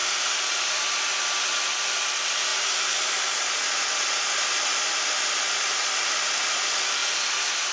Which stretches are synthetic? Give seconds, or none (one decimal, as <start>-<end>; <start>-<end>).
none